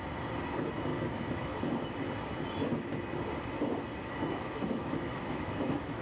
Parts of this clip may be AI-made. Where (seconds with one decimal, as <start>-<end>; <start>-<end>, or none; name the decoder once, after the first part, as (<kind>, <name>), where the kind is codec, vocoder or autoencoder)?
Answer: 0.9-1.6 (autoencoder, DAC-VAE); 4.0-6.0